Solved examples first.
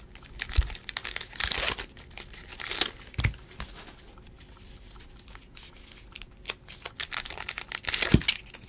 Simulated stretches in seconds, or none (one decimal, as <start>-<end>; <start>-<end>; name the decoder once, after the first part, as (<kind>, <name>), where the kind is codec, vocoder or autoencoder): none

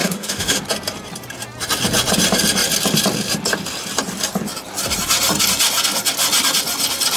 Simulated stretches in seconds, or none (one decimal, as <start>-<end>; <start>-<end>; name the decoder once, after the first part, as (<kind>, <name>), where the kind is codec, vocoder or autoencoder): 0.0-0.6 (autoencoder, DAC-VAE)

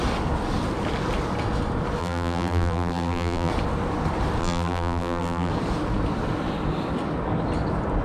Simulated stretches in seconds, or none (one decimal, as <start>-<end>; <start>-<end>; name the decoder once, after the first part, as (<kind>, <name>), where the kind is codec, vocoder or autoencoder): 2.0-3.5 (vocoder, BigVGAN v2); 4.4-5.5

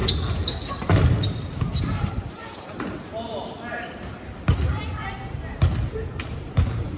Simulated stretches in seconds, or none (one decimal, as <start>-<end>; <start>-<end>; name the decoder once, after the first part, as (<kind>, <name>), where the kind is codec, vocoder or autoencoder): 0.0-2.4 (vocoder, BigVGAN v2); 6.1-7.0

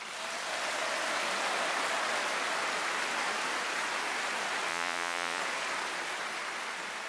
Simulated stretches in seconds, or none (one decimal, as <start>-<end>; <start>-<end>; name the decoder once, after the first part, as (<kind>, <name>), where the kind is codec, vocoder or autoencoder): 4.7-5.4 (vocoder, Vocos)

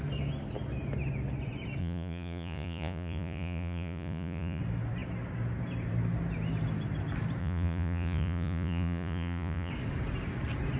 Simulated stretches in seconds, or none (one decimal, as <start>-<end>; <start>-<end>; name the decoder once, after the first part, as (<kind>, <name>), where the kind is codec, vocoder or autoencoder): 1.8-4.6 (vocoder, Vocos); 7.4-9.7